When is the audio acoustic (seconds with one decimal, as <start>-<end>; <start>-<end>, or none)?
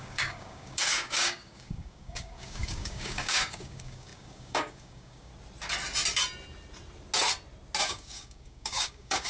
5.3-7.8